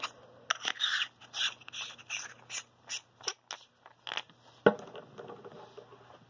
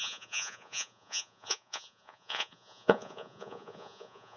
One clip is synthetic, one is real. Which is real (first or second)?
first